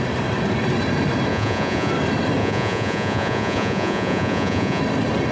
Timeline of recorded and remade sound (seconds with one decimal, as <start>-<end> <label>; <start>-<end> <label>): 0.0-1.3 recorded; 1.3-1.9 remade; 1.9-2.4 recorded; 2.4-4.8 remade; 4.8-5.3 recorded